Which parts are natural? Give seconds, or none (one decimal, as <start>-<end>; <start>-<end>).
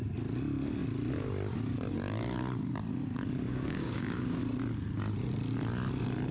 0.0-3.5; 4.4-6.3